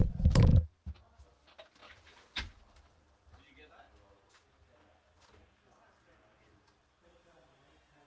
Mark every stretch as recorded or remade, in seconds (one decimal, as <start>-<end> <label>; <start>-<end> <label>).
0.0-8.1 recorded